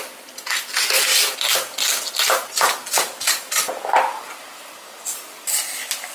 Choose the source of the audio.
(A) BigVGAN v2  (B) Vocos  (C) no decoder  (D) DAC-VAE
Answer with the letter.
C